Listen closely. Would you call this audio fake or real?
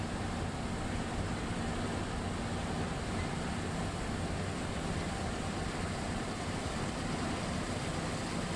real